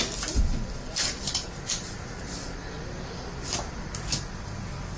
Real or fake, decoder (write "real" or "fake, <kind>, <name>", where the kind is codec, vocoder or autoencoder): fake, vocoder, BigVGAN v2